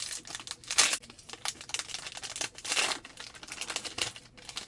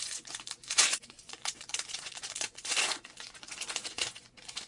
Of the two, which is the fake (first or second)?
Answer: second